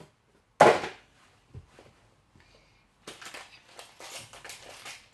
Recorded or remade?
recorded